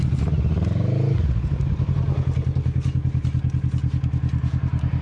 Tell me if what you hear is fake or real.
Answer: real